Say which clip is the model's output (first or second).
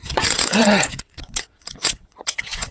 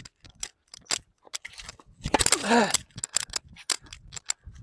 first